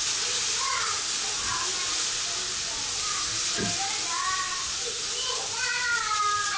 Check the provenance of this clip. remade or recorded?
recorded